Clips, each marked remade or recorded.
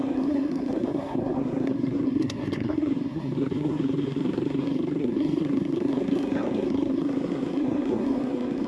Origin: remade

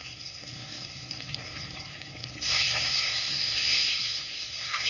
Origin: remade